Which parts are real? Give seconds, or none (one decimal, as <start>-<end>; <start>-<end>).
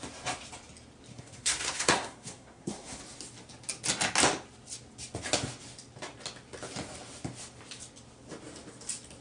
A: 0.0-1.1; 3.0-9.2